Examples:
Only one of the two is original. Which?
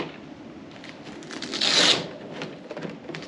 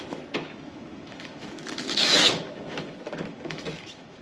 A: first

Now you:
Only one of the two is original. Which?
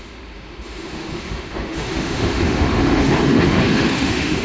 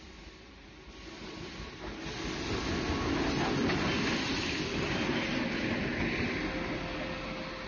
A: second